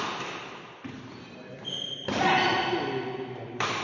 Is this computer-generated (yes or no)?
no